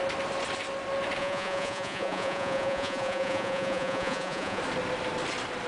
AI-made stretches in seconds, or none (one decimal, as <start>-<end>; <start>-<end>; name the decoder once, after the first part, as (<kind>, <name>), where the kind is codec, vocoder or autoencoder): 1.2-4.6 (vocoder, Vocos)